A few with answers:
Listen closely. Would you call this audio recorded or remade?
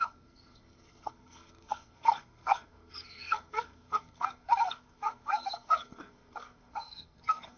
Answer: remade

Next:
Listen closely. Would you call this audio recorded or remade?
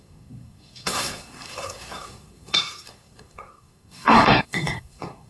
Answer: remade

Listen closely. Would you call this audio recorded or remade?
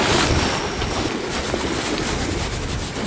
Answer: recorded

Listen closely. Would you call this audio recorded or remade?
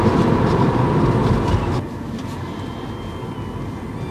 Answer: recorded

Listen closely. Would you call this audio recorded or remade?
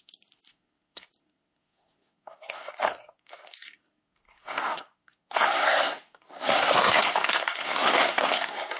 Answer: remade